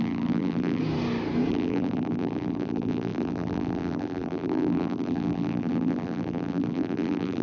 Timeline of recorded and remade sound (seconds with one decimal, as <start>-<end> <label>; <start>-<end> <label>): 0.0-0.8 remade; 0.8-1.5 recorded; 1.5-7.4 remade

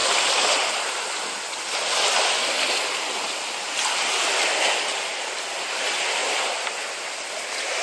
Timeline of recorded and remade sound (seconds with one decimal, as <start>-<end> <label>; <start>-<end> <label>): 0.0-7.8 recorded

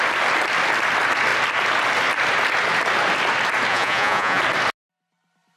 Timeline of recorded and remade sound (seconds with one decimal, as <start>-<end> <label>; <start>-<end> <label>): 0.0-3.7 recorded; 3.7-4.4 remade; 4.4-5.6 recorded